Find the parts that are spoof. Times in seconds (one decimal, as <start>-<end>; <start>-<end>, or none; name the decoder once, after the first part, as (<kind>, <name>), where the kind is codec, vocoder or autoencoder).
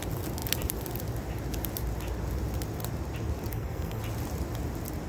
3.5-4.0 (codec, SNAC)